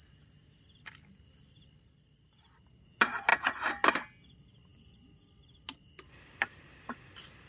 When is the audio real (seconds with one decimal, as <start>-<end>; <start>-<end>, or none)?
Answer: 0.0-7.5